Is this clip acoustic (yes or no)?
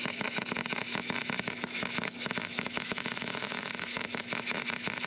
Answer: no